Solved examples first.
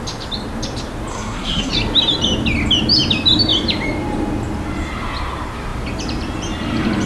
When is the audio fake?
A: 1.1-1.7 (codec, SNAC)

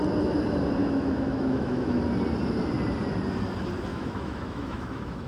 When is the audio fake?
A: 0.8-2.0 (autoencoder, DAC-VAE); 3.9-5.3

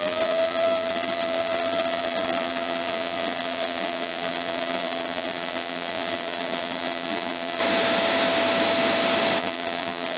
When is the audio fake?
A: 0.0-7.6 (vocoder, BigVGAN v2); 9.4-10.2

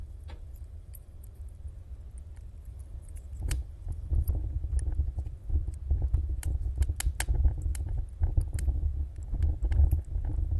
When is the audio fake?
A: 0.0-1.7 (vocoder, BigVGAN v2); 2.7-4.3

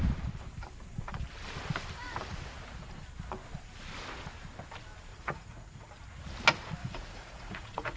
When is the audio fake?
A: 5.1-5.9 (vocoder, Vocos); 6.8-8.0

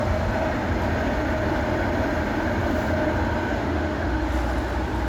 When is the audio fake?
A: 3.6-4.2 (autoencoder, DAC-VAE)

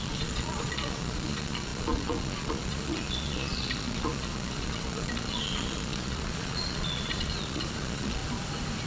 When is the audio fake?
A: 0.0-8.2 (vocoder, Vocos)